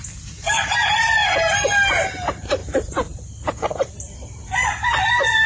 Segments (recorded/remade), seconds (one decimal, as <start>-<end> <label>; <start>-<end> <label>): 0.0-5.5 recorded